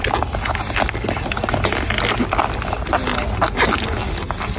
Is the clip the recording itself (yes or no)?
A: yes